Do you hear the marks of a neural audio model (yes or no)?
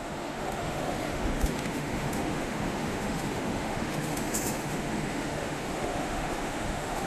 yes